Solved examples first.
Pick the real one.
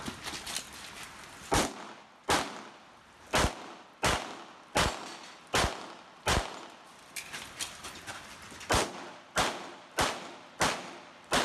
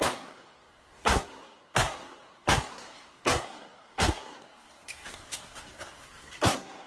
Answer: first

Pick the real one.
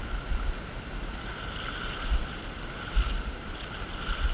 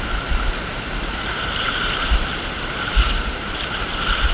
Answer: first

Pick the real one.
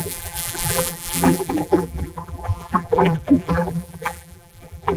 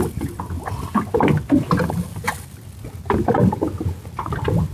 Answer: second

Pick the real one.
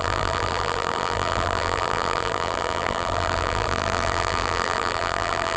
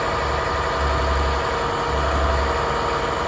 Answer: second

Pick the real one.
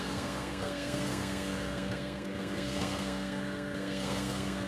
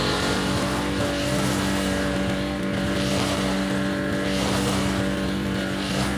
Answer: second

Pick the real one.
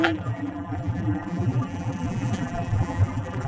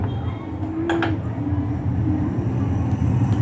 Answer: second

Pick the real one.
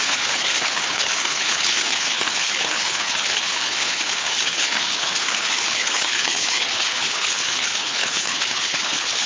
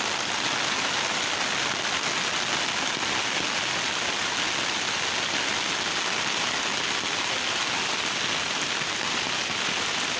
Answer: second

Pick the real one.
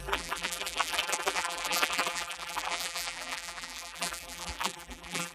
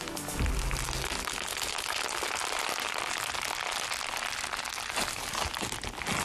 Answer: second